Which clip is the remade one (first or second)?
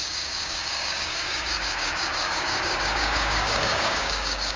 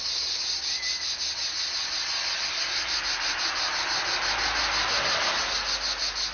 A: first